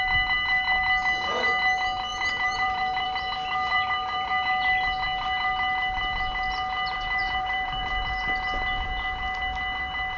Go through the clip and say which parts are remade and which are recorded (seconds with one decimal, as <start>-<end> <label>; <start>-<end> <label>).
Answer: 0.0-2.1 recorded; 2.1-3.3 remade; 3.3-3.7 recorded; 3.7-4.3 remade; 4.3-7.2 recorded; 7.2-7.8 remade; 7.8-10.2 recorded